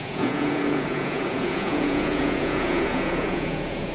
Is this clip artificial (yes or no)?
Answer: yes